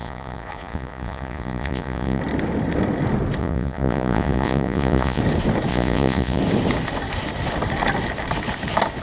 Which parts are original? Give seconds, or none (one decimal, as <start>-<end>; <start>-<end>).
2.2-3.4; 5.2-5.7; 6.4-9.0